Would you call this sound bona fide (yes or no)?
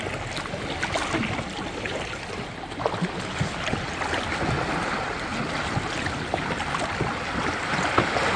yes